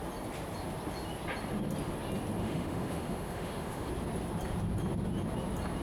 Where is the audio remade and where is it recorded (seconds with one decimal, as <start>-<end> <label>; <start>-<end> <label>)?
0.0-2.4 recorded; 2.4-3.9 remade; 3.9-5.8 recorded